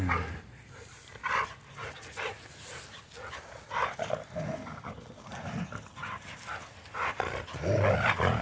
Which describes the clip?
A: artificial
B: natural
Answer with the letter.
B